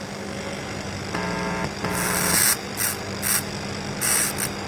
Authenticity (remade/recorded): recorded